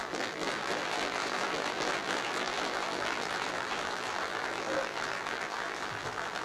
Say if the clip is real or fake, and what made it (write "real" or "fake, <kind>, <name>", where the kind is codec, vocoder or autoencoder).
fake, vocoder, BigVGAN v2